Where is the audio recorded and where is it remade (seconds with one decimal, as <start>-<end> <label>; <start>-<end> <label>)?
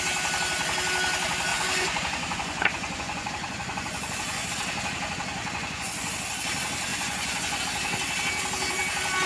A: 0.0-1.5 recorded; 1.5-4.5 remade; 4.5-5.3 recorded; 5.3-6.1 remade; 6.1-6.9 recorded; 6.9-7.6 remade; 7.6-9.3 recorded